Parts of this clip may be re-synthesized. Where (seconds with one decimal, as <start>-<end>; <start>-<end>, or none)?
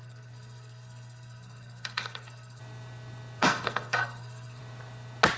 0.0-2.6; 3.4-4.6